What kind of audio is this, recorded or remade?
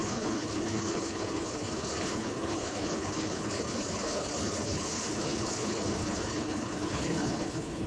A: remade